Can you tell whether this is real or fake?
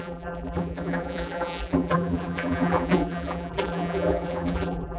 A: fake